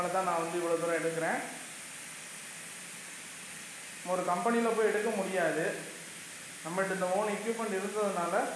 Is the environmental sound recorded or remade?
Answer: recorded